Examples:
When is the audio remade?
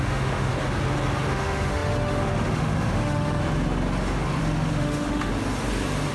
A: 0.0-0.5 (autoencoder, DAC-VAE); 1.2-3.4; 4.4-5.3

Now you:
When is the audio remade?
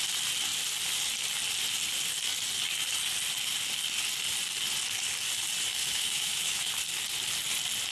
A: 5.8-6.6 (autoencoder, DAC-VAE)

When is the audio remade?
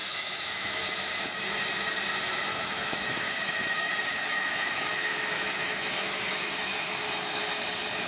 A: 0.0-0.8 (autoencoder, DAC-VAE); 2.5-7.4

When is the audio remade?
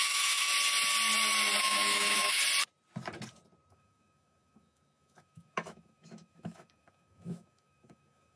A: 0.0-0.5 (autoencoder, DAC-VAE); 1.6-2.4; 3.7-8.4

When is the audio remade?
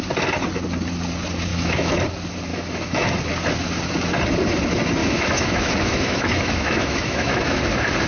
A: 1.5-2.0 (autoencoder, DAC-VAE); 2.5-3.1; 5.0-7.6